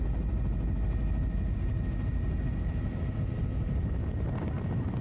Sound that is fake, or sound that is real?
real